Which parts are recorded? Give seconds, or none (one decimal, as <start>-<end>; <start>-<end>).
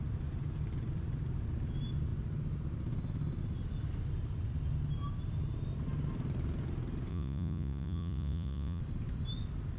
0.0-7.1; 8.8-9.8